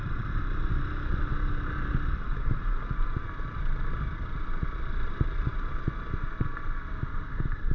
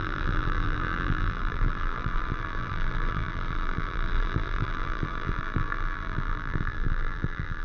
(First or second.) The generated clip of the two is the second